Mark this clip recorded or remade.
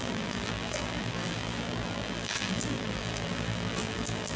remade